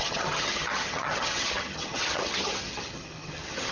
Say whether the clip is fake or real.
fake